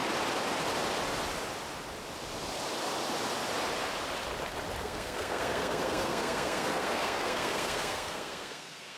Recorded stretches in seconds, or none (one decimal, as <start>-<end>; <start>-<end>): 0.0-4.8